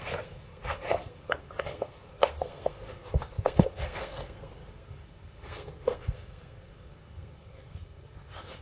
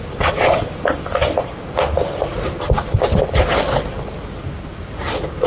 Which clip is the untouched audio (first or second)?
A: second